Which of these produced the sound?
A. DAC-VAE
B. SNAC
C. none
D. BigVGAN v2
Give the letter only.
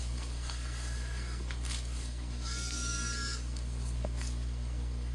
B